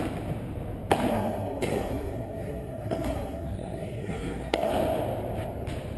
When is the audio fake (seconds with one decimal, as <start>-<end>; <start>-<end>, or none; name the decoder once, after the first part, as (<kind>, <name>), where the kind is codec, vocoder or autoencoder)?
1.1-4.7 (codec, SNAC)